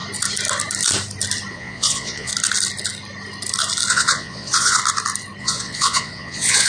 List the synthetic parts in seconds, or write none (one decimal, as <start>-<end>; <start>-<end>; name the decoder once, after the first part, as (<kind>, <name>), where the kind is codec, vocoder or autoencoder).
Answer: 1.5-2.3 (vocoder, Vocos); 3.9-4.8; 5.4-6.7